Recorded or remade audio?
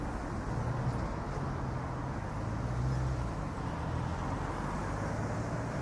recorded